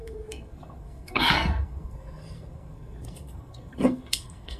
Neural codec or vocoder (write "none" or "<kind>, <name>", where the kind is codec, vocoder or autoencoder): codec, SNAC